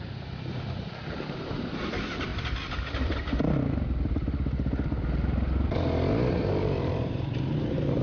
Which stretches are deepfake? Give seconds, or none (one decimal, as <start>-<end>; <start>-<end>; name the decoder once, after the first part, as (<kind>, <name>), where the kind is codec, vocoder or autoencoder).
0.0-2.3 (vocoder, BigVGAN v2); 6.6-8.0